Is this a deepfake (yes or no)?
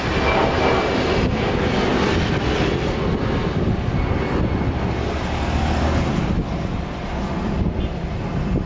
no